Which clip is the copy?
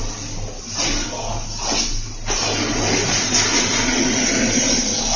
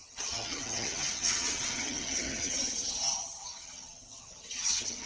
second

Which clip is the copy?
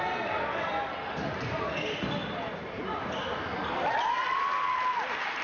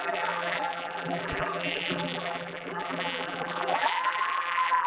second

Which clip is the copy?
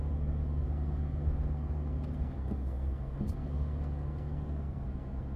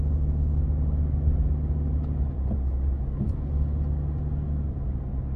first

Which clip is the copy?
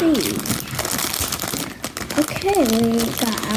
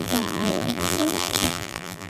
second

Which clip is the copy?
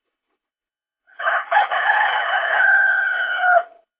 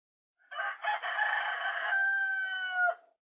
first